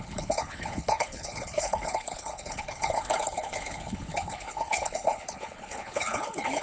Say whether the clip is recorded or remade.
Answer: remade